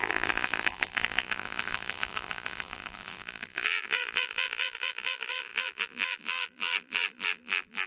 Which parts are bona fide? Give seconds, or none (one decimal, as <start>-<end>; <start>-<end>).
none